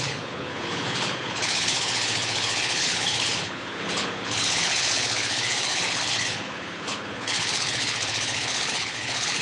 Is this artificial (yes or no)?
yes